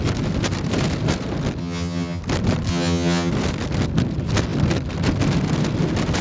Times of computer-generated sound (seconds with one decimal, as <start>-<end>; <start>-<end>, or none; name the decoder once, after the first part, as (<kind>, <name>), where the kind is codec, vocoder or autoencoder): 1.6-2.2 (vocoder, HiFi-GAN); 2.7-3.3